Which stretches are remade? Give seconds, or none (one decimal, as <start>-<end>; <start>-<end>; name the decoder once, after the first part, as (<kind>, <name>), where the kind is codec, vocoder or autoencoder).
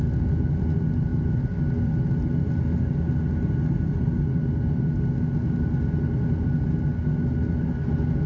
none